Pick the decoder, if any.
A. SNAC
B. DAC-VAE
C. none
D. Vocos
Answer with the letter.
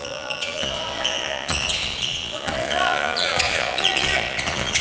D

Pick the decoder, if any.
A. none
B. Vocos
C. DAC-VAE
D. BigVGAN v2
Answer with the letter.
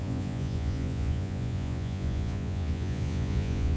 B